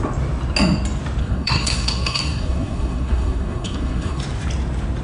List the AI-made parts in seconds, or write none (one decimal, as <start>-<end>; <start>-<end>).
1.2-4.2